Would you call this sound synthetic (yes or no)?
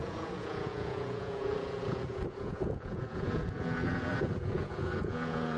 yes